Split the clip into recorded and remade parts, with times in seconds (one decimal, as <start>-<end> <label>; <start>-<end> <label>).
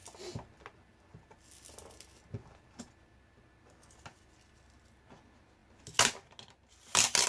0.0-7.3 recorded